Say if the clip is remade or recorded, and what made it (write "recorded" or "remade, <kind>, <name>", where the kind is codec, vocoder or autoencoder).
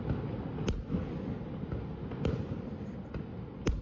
recorded